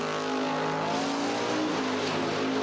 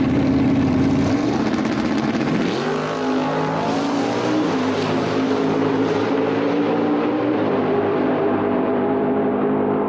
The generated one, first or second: second